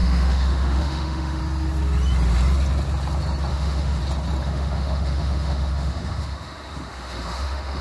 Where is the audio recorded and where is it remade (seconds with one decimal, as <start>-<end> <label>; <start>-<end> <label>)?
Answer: 0.0-1.4 remade; 1.4-3.5 recorded; 3.5-4.0 remade; 4.0-4.4 recorded; 4.4-7.8 remade